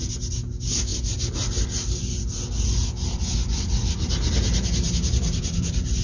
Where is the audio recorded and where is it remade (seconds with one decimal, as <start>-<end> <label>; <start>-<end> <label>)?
0.0-6.0 recorded